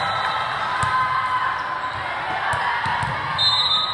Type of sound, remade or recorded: recorded